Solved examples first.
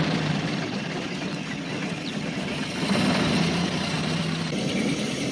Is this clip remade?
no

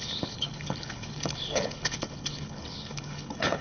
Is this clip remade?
yes